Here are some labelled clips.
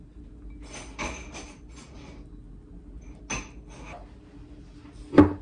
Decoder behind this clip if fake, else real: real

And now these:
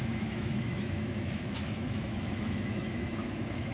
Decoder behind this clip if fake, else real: fake, autoencoder, DAC-VAE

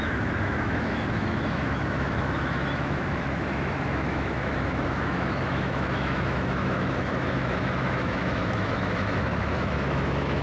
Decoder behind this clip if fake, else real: fake, autoencoder, DAC-VAE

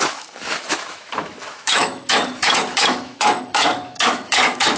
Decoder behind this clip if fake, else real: fake, autoencoder, DAC-VAE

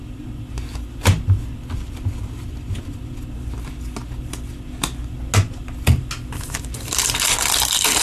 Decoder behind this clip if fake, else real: real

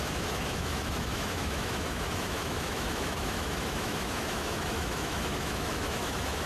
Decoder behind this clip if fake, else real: fake, autoencoder, DAC-VAE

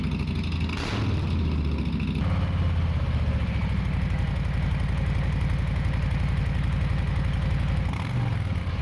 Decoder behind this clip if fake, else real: real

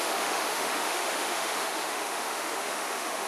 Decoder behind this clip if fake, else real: fake, autoencoder, DAC-VAE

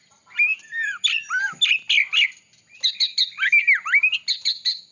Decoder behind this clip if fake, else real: real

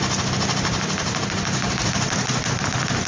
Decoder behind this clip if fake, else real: real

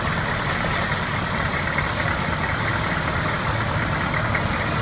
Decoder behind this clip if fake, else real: real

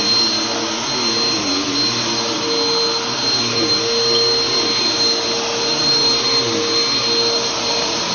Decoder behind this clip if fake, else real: real